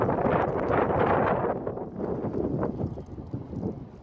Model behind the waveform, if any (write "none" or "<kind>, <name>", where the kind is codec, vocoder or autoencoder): none